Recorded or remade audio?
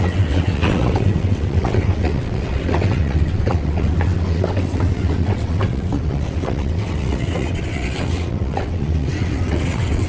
remade